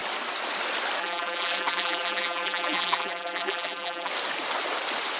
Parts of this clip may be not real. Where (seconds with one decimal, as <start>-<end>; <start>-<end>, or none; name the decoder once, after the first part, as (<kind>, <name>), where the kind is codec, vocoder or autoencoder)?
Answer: 1.0-4.1 (vocoder, BigVGAN v2)